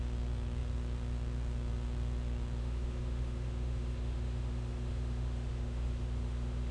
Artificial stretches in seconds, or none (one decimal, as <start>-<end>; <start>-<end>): 2.6-6.7